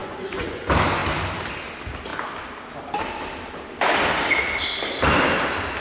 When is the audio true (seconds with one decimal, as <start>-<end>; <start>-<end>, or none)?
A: 0.6-5.8